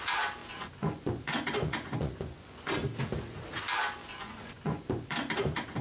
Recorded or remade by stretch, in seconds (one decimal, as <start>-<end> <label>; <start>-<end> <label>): 0.0-0.4 recorded; 0.4-2.7 remade; 2.7-4.0 recorded; 4.0-5.8 remade